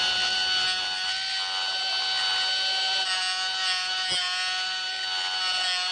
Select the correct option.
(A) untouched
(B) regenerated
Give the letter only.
A